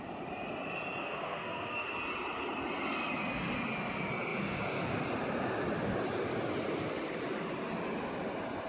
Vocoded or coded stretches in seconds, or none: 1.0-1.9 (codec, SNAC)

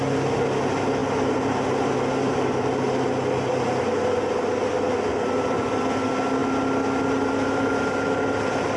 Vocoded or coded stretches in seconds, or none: none

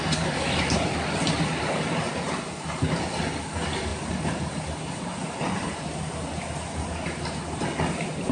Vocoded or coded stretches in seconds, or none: 3.9-7.6 (vocoder, BigVGAN v2)

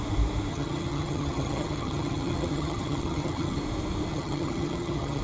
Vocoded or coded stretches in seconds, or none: 0.5-3.6 (vocoder, HiFi-GAN); 4.1-5.2

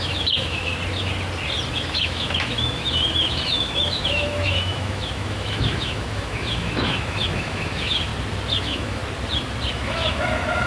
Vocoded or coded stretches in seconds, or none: 0.0-0.7 (autoencoder, DAC-VAE); 1.7-8.1; 8.6-9.0; 9.7-10.7